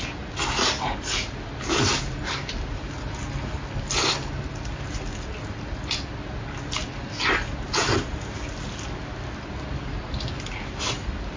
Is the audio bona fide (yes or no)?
yes